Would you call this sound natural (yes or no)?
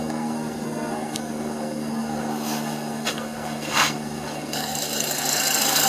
no